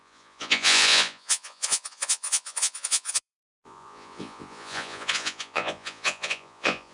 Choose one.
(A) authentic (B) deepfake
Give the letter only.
B